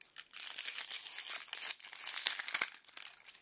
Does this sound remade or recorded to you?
recorded